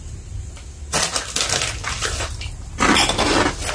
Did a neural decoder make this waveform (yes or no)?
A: no